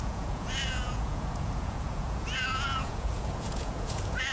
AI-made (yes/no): yes